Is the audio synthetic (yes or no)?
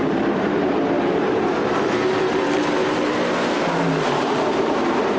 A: yes